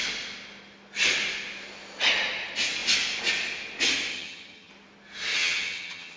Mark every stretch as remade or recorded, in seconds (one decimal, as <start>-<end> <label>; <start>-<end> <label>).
0.0-4.1 recorded; 4.1-4.7 remade; 4.7-5.3 recorded; 5.3-6.2 remade